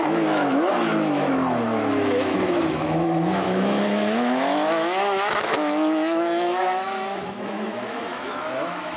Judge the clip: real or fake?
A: fake